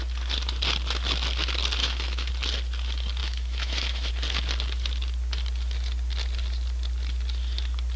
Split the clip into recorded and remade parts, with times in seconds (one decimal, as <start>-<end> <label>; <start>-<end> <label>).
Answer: 0.0-1.8 recorded; 1.8-2.3 remade; 2.3-3.2 recorded; 3.2-4.1 remade; 4.1-8.0 recorded